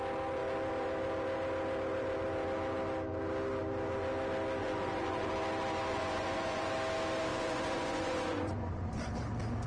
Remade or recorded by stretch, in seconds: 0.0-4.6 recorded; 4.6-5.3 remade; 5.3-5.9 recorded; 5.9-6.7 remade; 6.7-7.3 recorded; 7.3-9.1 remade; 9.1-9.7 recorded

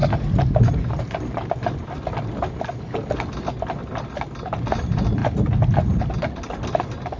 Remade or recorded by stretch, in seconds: 0.0-1.0 remade; 1.0-7.2 recorded

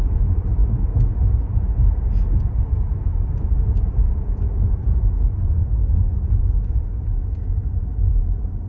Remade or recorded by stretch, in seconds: 0.0-8.7 remade

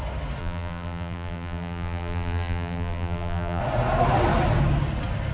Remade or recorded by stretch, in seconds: 0.0-0.4 recorded; 0.4-3.6 remade; 3.6-5.3 recorded

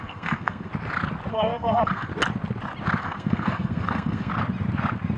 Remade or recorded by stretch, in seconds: 0.0-0.7 remade; 0.7-1.3 recorded; 1.3-2.1 remade; 2.1-3.0 recorded; 3.0-4.3 remade; 4.3-5.2 recorded